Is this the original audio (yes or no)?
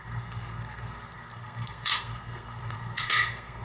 no